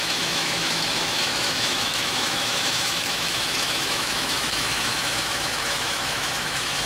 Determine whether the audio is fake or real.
fake